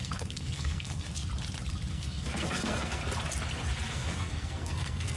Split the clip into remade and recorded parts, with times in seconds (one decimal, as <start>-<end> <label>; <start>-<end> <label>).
0.0-1.3 remade; 1.3-1.9 recorded; 1.9-3.0 remade; 3.0-3.9 recorded; 3.9-5.2 remade